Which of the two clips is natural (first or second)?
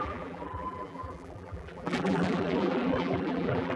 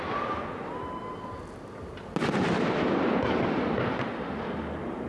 second